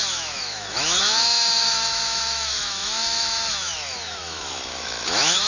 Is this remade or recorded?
remade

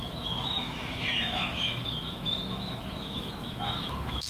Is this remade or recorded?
remade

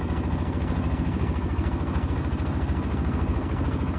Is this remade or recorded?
remade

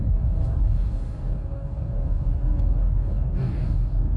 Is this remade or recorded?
remade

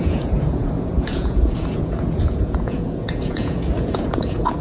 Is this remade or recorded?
remade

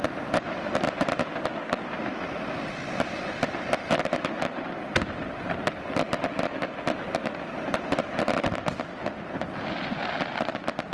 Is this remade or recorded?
recorded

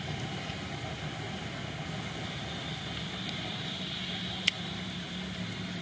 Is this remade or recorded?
recorded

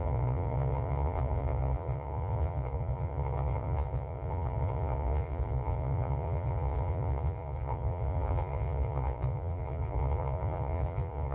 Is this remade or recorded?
remade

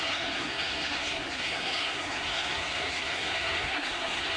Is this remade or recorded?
remade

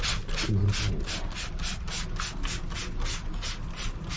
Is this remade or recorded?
recorded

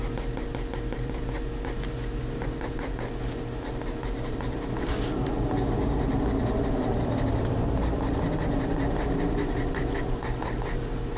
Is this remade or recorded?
remade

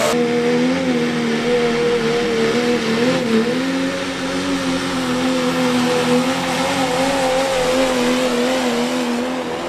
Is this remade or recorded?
recorded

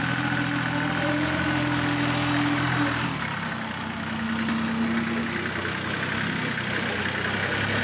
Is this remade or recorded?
recorded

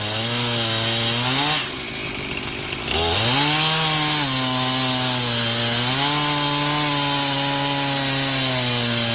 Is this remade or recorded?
recorded